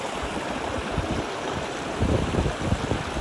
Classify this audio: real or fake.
real